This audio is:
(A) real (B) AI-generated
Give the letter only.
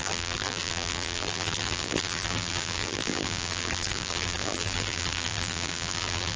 B